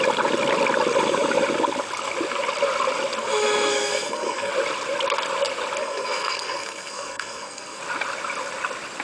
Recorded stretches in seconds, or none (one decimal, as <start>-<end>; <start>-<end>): 0.0-3.7; 4.5-5.8; 7.8-9.0